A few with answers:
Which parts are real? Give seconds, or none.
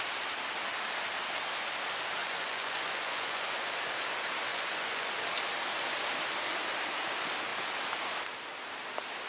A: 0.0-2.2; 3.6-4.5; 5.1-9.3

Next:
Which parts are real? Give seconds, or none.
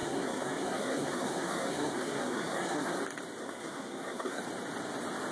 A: 3.0-3.4; 4.4-5.3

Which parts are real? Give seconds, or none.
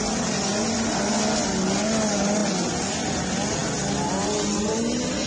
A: 0.0-5.3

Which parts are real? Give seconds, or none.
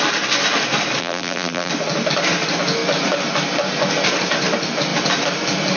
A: 0.0-1.0; 1.7-5.8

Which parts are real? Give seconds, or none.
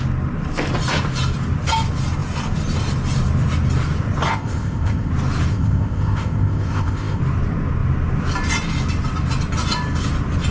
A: 0.0-4.3; 5.1-5.5; 7.2-10.5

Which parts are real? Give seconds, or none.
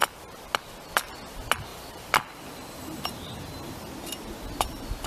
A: 0.0-1.7; 3.1-5.1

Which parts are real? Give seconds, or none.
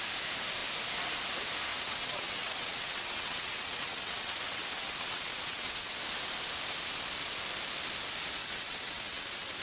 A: 0.0-1.7; 6.0-8.4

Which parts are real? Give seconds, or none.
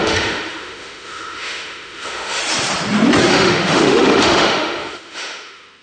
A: 2.4-3.3